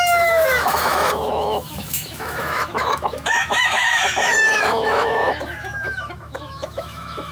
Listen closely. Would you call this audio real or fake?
fake